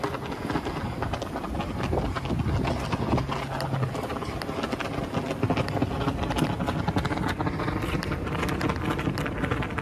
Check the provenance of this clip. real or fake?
real